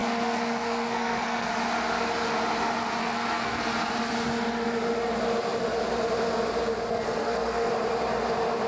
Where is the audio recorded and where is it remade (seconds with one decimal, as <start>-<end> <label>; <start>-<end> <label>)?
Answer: 0.0-1.5 remade; 1.5-3.0 recorded; 3.0-3.6 remade; 3.6-6.9 recorded; 6.9-7.7 remade; 7.7-8.7 recorded